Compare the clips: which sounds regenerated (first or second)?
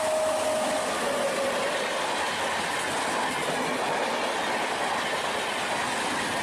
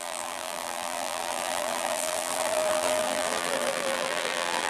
second